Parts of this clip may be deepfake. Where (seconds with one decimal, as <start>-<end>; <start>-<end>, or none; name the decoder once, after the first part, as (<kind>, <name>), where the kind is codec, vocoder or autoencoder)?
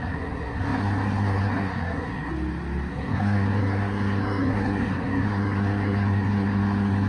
0.0-2.3 (codec, SNAC); 2.9-7.1